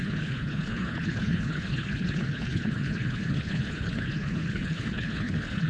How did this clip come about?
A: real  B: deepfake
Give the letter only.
B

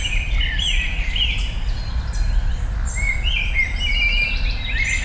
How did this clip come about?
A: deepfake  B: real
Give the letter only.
B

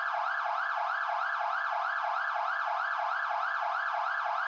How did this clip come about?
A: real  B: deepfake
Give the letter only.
A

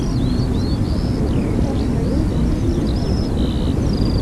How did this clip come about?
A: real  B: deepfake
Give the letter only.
A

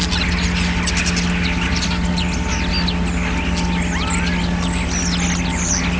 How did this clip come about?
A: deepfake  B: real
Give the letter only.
B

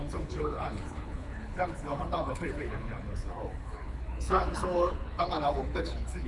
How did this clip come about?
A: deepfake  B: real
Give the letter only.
A